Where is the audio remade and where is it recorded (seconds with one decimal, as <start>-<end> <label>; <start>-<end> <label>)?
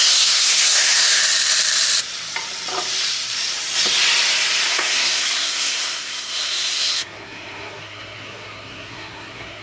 0.0-1.2 remade; 1.2-4.7 recorded; 4.7-9.6 remade